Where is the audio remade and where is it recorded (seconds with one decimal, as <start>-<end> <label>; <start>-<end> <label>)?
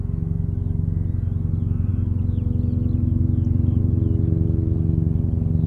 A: 0.0-5.7 recorded